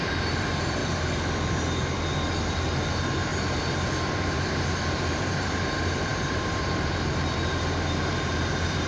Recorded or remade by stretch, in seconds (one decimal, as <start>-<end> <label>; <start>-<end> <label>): 0.0-0.8 remade; 0.8-2.4 recorded; 2.4-3.3 remade; 3.3-4.1 recorded; 4.1-8.9 remade